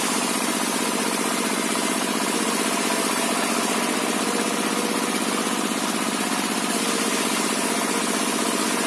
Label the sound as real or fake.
real